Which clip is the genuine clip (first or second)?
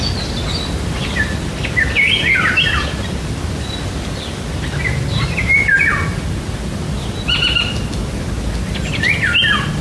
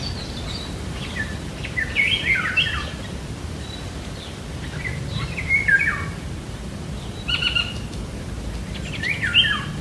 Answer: first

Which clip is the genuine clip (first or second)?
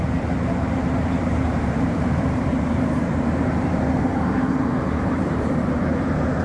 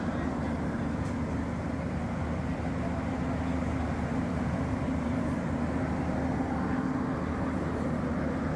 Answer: second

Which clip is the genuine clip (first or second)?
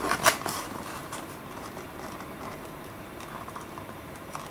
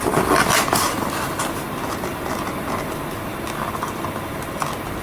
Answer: second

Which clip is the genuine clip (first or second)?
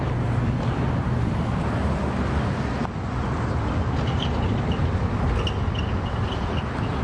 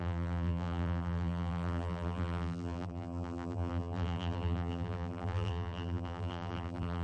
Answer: first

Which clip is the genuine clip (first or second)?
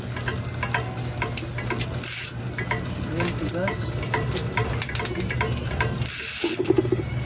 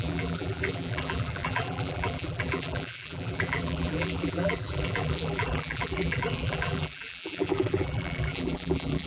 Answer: first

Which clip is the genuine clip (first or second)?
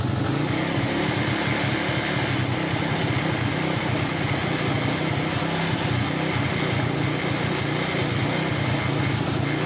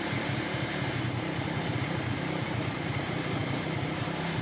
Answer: first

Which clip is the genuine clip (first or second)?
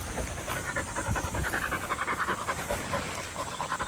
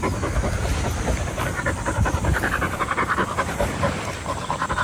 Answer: first